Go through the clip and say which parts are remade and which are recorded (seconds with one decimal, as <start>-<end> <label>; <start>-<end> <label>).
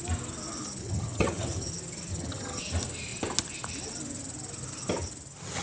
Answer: 0.0-0.8 recorded; 0.8-1.7 remade; 1.7-2.1 recorded; 2.1-2.6 remade; 2.6-5.6 recorded